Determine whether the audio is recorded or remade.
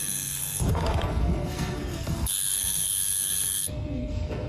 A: remade